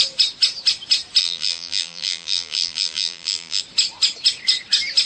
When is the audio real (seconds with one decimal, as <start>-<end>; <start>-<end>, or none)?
0.0-1.2; 3.6-5.1